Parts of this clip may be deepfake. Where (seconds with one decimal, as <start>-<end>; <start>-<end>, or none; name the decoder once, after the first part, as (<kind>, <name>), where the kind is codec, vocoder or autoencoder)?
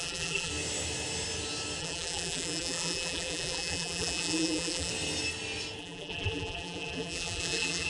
0.0-0.5 (vocoder, BigVGAN v2); 1.8-4.9; 5.8-7.9